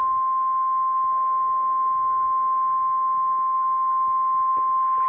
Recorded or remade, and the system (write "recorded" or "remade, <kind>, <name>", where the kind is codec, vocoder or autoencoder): recorded